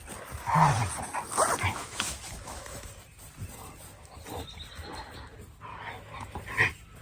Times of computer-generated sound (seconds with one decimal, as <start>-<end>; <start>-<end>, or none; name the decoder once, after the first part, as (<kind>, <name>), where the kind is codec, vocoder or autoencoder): 1.7-2.9 (autoencoder, DAC-VAE)